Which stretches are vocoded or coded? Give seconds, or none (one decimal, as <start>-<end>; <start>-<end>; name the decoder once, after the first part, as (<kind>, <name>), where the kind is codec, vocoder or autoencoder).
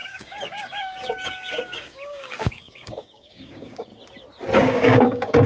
0.0-3.9 (codec, DAC); 4.6-5.5